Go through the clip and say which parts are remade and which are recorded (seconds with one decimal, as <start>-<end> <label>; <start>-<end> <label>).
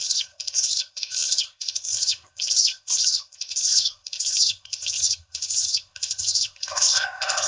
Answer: 0.0-7.5 remade